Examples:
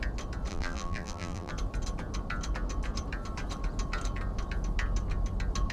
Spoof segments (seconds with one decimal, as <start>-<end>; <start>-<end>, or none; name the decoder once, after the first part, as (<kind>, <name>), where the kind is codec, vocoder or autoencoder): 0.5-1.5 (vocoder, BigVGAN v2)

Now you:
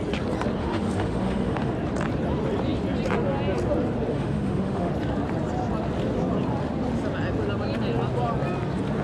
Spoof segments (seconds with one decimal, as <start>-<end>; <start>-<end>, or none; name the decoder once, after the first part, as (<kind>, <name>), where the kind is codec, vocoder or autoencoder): 0.6-1.7 (autoencoder, DAC-VAE); 4.1-4.9

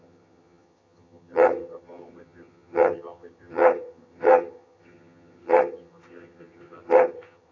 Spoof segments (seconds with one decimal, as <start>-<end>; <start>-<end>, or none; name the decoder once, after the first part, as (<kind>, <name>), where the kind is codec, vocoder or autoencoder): 0.0-7.5 (vocoder, HiFi-GAN)

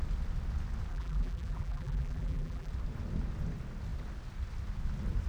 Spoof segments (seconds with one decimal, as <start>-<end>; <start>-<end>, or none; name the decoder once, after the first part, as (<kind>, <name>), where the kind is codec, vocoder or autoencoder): 0.9-2.7 (vocoder, BigVGAN v2)

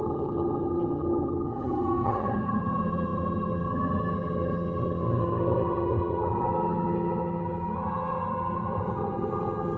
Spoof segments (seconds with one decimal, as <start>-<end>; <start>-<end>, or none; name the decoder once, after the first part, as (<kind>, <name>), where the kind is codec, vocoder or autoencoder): 0.0-9.8 (vocoder, HiFi-GAN)

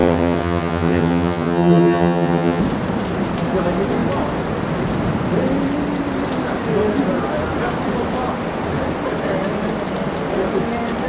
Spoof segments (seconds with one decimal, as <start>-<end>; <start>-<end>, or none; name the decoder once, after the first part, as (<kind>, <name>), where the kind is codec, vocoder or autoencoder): 0.0-2.6 (vocoder, HiFi-GAN)

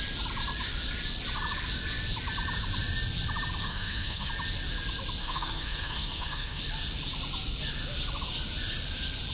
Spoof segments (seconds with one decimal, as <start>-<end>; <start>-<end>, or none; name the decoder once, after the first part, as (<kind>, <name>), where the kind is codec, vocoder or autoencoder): 3.6-4.3 (codec, SNAC); 5.2-6.6